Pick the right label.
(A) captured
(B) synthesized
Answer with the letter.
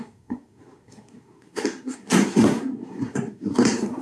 B